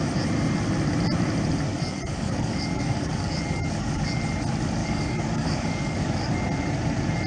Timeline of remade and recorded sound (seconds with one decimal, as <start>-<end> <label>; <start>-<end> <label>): 0.0-1.7 recorded; 1.7-4.2 remade; 4.2-4.8 recorded; 4.8-6.3 remade; 6.3-7.3 recorded